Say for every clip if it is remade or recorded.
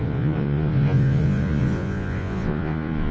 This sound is remade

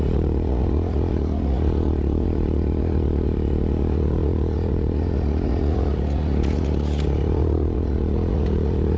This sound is remade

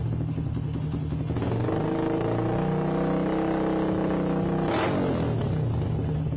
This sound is recorded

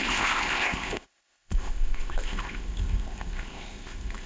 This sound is remade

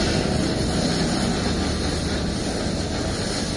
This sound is recorded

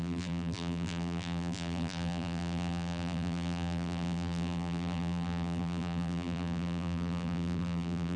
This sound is remade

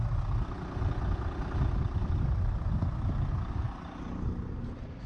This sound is recorded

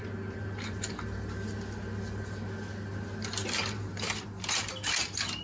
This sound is recorded